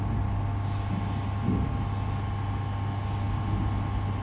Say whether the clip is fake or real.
real